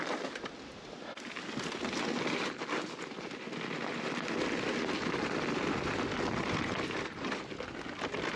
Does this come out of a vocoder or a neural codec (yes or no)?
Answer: no